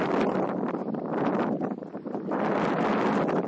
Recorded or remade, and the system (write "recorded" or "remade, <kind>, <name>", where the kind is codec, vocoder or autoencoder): recorded